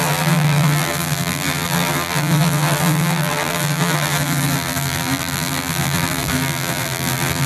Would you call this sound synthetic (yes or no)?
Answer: yes